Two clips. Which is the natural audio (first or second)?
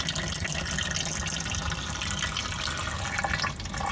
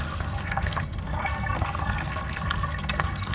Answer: first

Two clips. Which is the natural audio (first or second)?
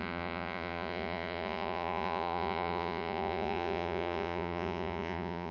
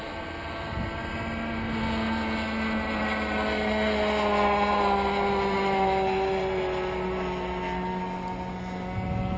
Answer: second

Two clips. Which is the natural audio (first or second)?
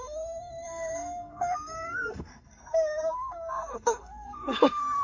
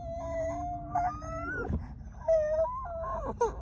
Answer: second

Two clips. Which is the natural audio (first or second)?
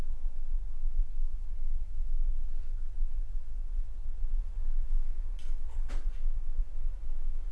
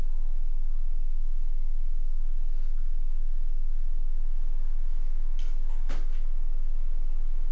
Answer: second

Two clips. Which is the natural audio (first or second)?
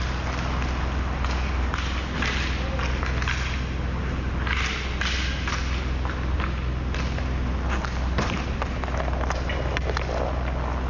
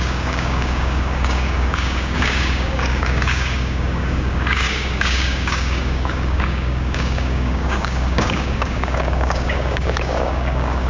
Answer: first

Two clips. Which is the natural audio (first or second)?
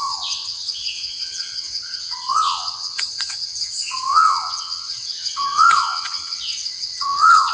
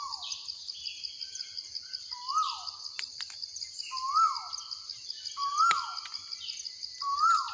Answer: second